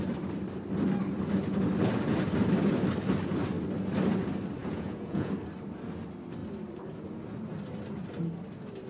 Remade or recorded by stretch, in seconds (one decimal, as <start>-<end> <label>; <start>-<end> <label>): 0.0-4.6 recorded; 4.6-5.3 remade; 5.3-8.9 recorded